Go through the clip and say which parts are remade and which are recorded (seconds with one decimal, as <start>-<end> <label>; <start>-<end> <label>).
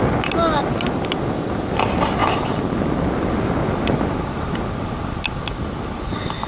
0.0-6.5 recorded